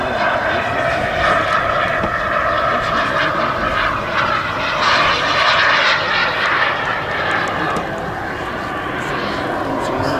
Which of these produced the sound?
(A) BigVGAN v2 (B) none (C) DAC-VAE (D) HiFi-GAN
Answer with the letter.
B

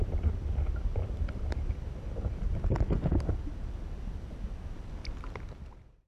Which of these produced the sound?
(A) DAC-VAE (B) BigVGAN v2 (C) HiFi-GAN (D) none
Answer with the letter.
D